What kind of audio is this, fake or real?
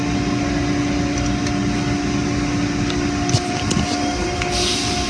real